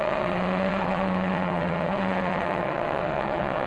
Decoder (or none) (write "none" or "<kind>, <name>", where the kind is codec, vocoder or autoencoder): vocoder, WaveNeXt